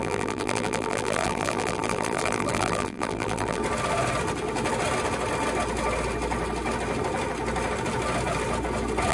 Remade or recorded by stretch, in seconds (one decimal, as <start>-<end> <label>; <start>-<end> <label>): 0.0-3.6 remade; 3.6-9.1 recorded